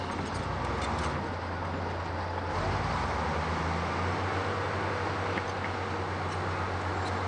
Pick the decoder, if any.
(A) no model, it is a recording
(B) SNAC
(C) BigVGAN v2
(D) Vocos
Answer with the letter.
A